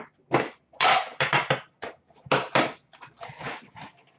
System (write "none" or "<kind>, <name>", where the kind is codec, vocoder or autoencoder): none